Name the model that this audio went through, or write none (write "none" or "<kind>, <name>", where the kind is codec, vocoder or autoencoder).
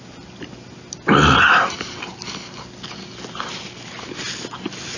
none